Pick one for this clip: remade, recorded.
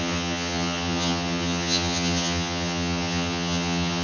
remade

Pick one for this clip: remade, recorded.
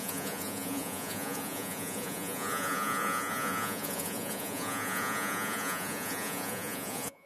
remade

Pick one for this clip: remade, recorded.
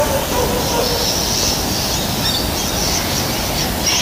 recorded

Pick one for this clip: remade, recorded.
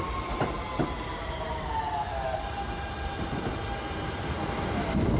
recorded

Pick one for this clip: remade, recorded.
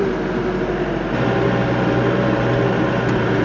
recorded